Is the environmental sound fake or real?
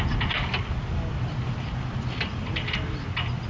real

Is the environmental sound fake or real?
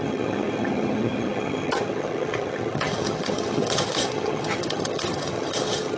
fake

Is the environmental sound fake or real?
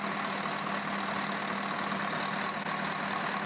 real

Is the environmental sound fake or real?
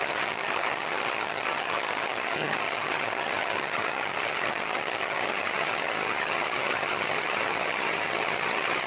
fake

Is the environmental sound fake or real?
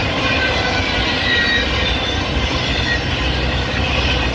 real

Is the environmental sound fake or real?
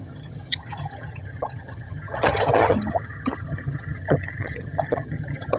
fake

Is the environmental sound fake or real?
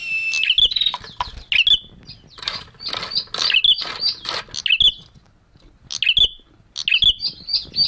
real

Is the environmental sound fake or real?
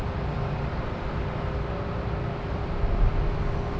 real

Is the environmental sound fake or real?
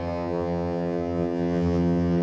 fake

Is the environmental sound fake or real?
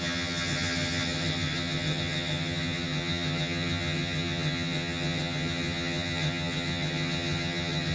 fake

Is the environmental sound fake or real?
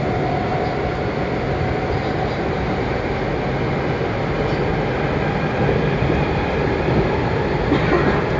real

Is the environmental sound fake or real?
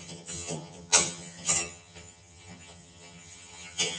fake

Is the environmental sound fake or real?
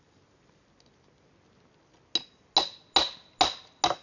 real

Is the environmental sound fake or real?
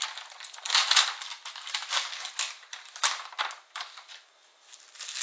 real